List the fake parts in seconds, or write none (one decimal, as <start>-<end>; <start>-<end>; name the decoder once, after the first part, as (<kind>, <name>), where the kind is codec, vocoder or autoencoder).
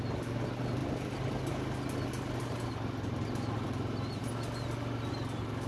none